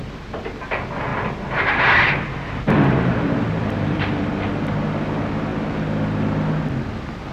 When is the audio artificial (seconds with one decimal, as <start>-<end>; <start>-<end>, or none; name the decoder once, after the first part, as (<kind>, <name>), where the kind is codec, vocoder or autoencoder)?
1.1-4.5 (vocoder, BigVGAN v2)